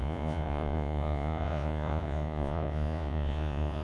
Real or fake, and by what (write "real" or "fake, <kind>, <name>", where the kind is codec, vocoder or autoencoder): fake, vocoder, Vocos